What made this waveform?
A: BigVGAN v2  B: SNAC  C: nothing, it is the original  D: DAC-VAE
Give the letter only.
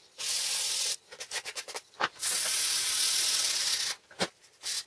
C